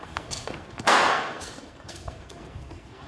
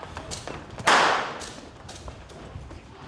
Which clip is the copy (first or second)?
first